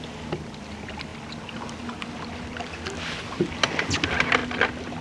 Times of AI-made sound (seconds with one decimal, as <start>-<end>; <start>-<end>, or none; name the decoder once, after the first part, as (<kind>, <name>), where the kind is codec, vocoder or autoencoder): 4.4-5.0 (vocoder, BigVGAN v2)